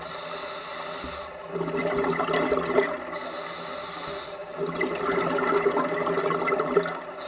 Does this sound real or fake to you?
real